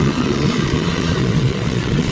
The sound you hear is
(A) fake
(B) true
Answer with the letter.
A